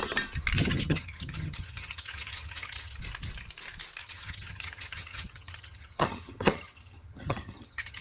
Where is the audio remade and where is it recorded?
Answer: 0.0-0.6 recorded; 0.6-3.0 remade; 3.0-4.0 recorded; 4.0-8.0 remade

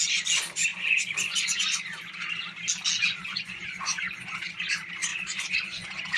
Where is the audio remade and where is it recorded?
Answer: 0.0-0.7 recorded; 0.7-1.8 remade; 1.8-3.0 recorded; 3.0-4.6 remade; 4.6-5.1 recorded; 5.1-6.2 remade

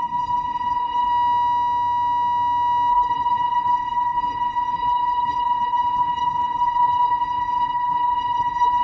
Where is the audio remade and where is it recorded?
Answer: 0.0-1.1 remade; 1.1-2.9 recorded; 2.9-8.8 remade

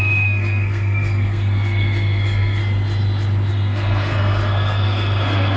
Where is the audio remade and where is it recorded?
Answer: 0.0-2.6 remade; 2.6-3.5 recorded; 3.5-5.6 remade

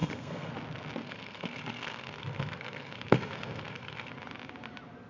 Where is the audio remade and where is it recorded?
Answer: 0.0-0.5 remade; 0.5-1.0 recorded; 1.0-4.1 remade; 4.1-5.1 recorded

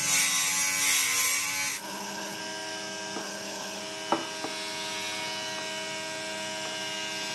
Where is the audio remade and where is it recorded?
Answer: 0.0-1.7 recorded; 1.7-2.4 remade; 2.4-3.2 recorded; 3.2-3.8 remade; 3.8-7.3 recorded

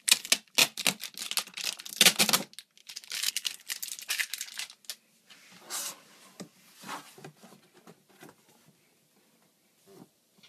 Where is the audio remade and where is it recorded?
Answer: 0.0-2.8 recorded; 2.8-3.3 remade; 3.3-10.5 recorded